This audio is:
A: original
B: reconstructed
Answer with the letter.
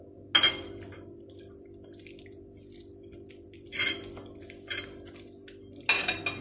A